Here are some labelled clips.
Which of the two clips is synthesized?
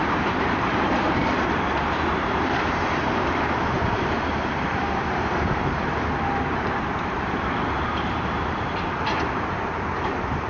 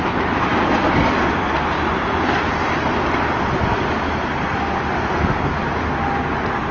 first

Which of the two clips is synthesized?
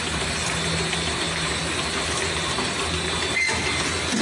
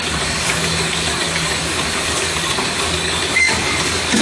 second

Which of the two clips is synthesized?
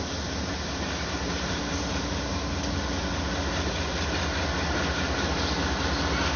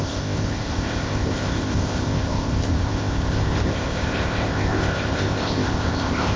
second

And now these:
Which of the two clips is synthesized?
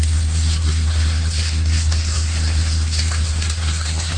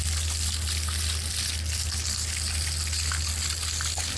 first